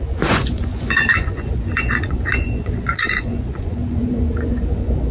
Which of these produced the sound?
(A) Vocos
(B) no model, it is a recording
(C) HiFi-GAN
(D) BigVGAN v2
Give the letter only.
A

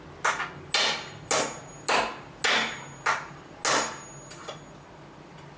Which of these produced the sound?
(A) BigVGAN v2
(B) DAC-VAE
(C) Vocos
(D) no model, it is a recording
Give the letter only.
D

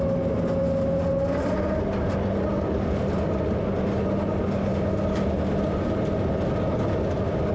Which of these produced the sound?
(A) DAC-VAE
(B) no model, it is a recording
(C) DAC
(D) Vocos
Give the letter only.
B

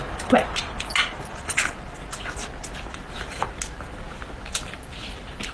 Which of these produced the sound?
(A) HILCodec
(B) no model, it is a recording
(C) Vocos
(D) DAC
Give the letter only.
B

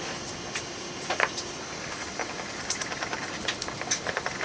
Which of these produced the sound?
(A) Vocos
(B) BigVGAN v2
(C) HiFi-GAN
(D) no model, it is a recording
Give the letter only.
D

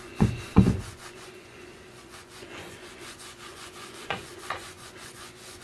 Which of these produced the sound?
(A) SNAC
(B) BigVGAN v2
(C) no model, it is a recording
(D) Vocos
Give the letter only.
D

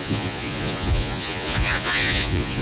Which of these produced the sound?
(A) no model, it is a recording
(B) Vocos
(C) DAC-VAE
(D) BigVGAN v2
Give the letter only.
B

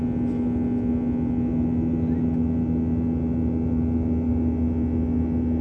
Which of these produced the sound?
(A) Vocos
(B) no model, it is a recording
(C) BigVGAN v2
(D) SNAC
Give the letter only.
B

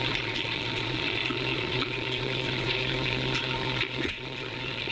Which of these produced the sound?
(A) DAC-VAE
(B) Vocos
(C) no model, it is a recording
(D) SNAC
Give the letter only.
B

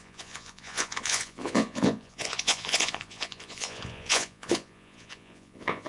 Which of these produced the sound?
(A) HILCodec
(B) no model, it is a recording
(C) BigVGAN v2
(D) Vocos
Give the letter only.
D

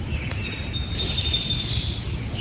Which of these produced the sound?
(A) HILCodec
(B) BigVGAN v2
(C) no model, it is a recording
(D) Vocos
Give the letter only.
C